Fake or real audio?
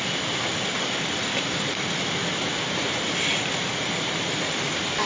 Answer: real